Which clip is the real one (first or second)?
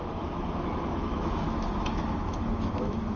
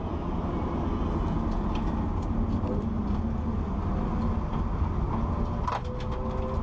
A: second